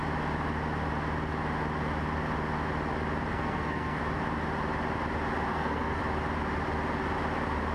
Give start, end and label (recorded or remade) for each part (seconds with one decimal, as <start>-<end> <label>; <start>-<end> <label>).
0.0-3.3 recorded; 3.3-4.0 remade; 4.0-5.5 recorded; 5.5-6.0 remade; 6.0-7.7 recorded